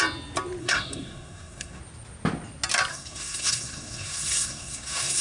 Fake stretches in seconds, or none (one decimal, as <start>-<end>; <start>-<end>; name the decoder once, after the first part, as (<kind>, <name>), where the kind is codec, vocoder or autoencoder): 0.6-1.8 (codec, SNAC); 2.9-5.2